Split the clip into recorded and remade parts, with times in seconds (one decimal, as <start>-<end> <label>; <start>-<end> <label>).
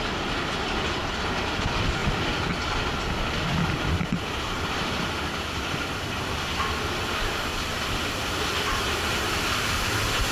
0.0-10.3 recorded